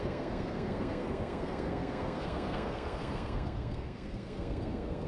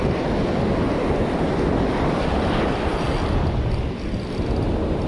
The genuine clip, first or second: second